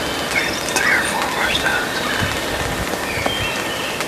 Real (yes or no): yes